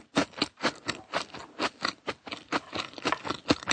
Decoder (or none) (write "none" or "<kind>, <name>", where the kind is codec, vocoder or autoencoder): none